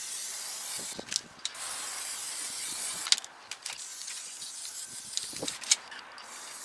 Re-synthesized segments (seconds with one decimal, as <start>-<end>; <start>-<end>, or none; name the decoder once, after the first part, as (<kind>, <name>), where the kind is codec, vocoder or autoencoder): 2.4-3.0 (vocoder, Vocos); 3.9-4.6